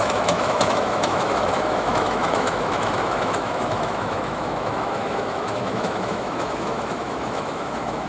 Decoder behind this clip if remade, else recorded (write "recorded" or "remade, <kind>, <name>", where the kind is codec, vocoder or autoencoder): remade, autoencoder, DAC-VAE